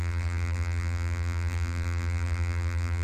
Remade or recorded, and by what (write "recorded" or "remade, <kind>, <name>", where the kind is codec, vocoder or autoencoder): remade, vocoder, BigVGAN v2